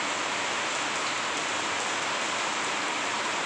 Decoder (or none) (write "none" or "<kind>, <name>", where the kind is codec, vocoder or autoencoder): none